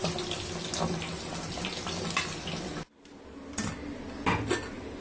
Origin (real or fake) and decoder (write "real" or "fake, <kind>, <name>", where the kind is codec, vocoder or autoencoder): real